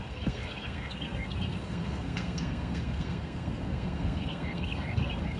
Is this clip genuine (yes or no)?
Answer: no